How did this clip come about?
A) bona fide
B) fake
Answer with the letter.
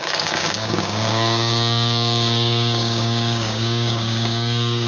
B